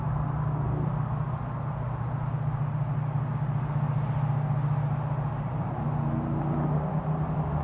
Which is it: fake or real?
real